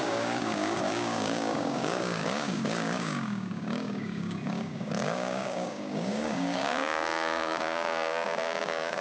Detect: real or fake fake